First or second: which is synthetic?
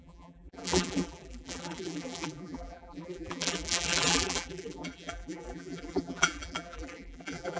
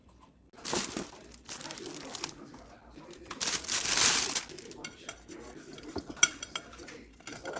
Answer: first